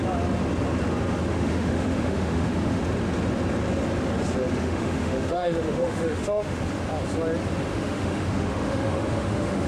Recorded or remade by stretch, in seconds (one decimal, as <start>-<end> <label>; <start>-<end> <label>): 0.0-1.3 recorded; 1.3-2.8 remade; 2.8-4.6 recorded; 4.6-6.6 remade; 6.6-7.7 recorded; 7.7-9.7 remade